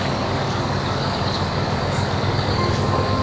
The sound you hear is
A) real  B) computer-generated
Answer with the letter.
B